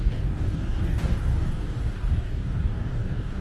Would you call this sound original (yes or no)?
no